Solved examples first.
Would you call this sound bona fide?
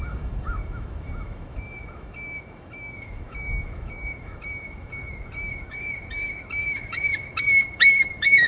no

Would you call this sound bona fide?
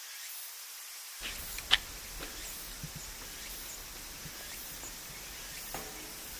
yes